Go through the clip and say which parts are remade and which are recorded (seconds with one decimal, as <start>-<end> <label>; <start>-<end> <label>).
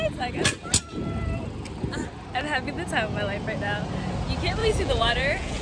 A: 0.0-4.6 recorded; 4.6-5.6 remade